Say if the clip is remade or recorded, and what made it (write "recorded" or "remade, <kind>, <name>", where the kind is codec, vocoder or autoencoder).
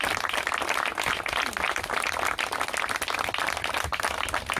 recorded